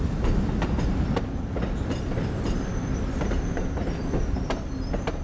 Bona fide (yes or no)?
no